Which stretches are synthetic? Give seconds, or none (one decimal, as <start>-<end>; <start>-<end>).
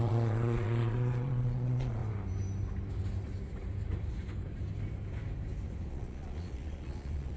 0.0-2.0; 5.9-7.4